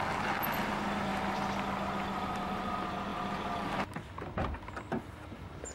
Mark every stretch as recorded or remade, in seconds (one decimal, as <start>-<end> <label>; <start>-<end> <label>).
0.0-1.1 recorded; 1.1-2.6 remade; 2.6-5.7 recorded